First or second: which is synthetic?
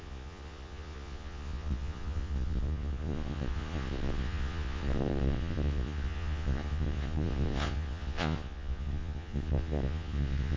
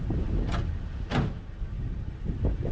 first